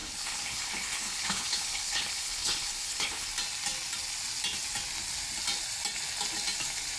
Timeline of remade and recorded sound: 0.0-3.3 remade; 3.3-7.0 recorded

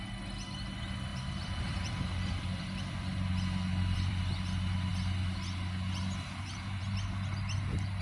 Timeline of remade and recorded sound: 0.0-1.1 recorded; 1.1-4.2 remade; 4.2-8.0 recorded

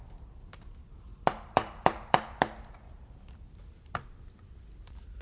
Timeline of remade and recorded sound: 0.0-5.2 remade

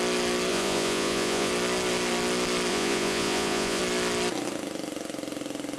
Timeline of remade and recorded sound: 0.0-0.5 recorded; 0.5-1.5 remade; 1.5-2.7 recorded; 2.7-3.8 remade; 3.8-5.8 recorded

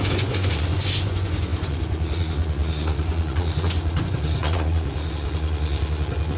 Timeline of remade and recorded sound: 0.0-6.4 remade

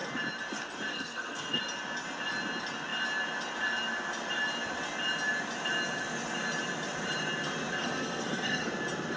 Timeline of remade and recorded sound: 0.0-0.9 recorded; 0.9-1.6 remade; 1.6-7.8 recorded; 7.8-8.7 remade; 8.7-9.2 recorded

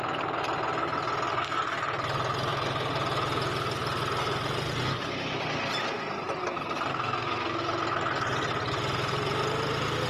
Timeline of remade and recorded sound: 0.0-6.9 recorded; 6.9-7.6 remade; 7.6-10.1 recorded